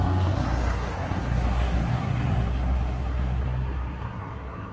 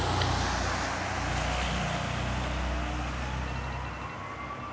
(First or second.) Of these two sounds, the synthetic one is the first